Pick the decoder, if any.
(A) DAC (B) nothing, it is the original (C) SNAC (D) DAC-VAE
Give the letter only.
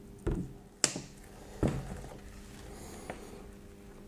B